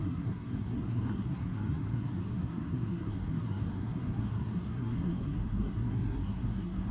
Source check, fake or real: fake